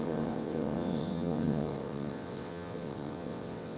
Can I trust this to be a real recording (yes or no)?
no